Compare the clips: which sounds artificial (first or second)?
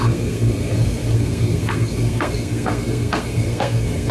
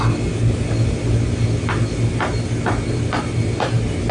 first